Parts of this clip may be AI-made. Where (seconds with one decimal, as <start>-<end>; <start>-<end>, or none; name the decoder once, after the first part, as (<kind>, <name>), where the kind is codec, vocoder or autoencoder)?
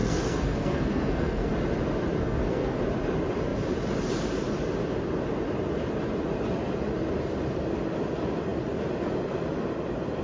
0.0-1.5 (codec, SNAC); 2.2-2.8